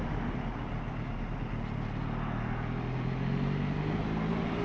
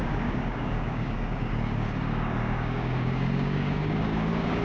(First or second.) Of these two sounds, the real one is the first